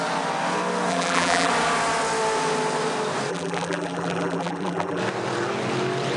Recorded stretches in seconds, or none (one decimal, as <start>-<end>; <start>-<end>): 0.0-0.9; 1.5-3.3; 5.0-6.2